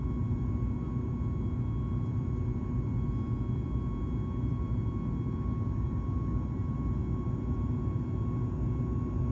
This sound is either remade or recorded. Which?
recorded